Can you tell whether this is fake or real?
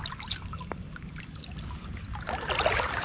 real